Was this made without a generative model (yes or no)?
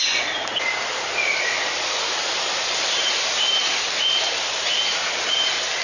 yes